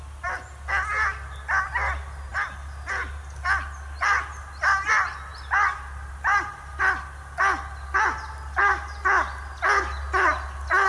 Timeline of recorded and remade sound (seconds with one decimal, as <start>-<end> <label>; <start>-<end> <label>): 0.0-10.9 recorded